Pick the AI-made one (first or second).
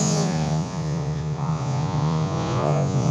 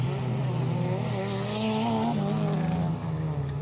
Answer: first